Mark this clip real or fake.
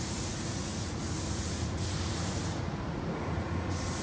fake